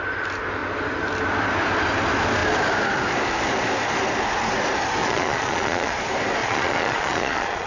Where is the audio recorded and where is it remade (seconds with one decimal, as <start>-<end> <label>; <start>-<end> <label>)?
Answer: 0.0-5.0 recorded; 5.0-6.0 remade; 6.0-6.4 recorded; 6.4-7.7 remade